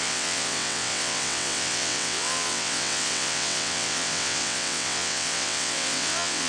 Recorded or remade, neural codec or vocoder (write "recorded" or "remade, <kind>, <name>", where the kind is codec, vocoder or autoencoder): remade, vocoder, WaveNeXt